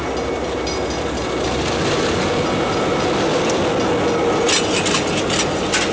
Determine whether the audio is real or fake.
real